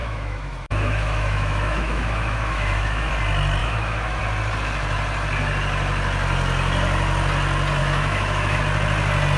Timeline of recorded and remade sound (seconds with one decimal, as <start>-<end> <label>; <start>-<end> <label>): 0.0-3.1 remade; 3.1-3.6 recorded; 3.6-4.2 remade; 4.2-7.8 recorded; 7.8-8.6 remade; 8.6-9.4 recorded